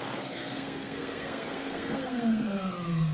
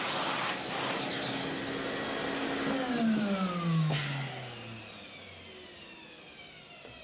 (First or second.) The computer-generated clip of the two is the first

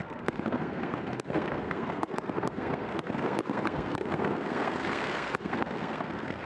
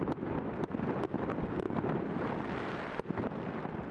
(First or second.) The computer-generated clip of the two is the first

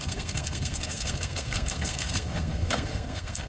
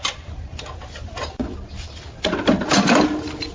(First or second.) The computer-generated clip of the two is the first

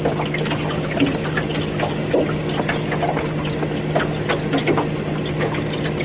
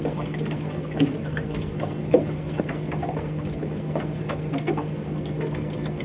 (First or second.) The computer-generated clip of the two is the second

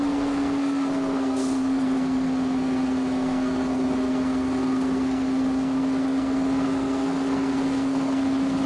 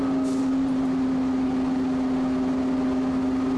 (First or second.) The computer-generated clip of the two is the first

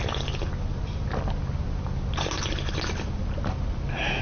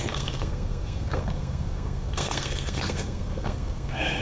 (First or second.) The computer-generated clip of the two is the second